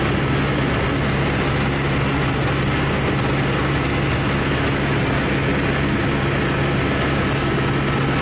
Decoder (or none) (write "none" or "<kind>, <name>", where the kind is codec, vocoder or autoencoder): none